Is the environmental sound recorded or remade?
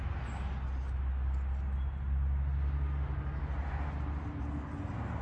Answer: recorded